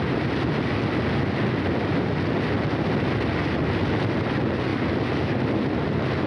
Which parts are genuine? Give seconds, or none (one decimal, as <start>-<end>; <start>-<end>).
0.0-6.3

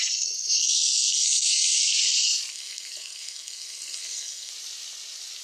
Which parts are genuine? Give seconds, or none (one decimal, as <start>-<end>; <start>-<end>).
0.0-0.6; 1.8-2.5; 4.5-5.4